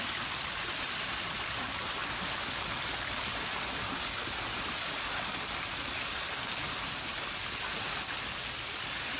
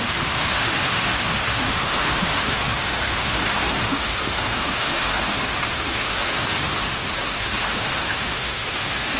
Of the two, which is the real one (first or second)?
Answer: first